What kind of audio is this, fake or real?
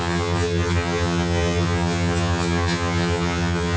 fake